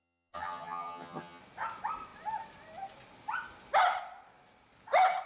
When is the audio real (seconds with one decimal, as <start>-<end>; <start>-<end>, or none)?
1.4-5.3